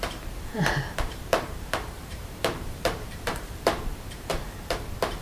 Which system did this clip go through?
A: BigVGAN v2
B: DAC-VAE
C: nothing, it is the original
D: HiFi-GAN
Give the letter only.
A